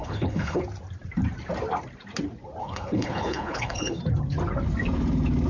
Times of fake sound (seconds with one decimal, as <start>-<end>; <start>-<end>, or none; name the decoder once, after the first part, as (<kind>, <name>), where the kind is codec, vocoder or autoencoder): 0.0-0.6 (codec, HILCodec); 2.6-4.0